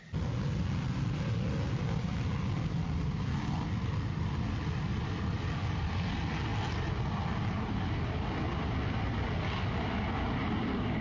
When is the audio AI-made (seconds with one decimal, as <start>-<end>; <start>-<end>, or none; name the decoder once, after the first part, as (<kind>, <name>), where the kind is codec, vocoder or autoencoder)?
none